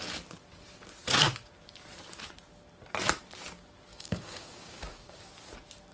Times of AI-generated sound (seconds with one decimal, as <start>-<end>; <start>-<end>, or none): 3.9-5.3